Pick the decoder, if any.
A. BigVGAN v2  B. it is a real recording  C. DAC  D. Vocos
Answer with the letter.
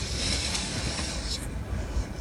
C